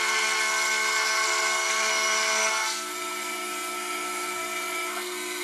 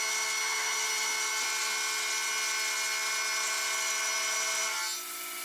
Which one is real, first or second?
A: second